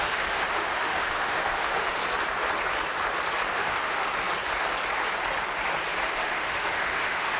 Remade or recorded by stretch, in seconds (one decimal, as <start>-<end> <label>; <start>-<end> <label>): 0.0-2.0 remade; 2.0-3.5 recorded; 3.5-4.0 remade; 4.0-6.1 recorded; 6.1-7.4 remade